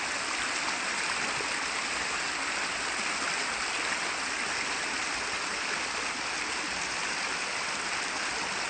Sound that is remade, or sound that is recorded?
recorded